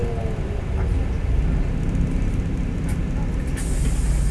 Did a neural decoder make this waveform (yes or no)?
no